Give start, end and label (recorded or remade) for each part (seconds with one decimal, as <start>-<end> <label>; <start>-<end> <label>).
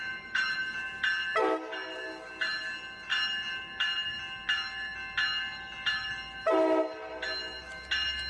0.0-8.3 recorded